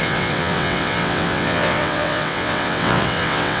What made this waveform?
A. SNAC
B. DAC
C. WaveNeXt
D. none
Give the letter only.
C